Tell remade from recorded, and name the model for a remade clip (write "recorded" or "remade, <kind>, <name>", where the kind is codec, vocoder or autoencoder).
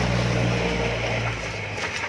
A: recorded